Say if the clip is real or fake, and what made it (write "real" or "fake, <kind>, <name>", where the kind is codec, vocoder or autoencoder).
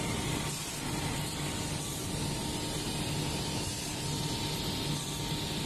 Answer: real